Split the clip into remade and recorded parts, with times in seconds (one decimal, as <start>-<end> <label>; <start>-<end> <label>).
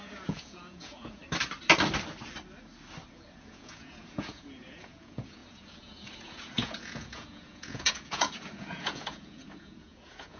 0.0-1.2 remade; 1.2-3.1 recorded; 3.1-10.4 remade